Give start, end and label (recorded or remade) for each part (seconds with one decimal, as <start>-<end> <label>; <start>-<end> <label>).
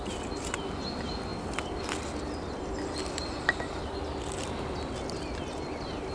0.0-6.1 recorded